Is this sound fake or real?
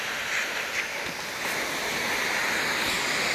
real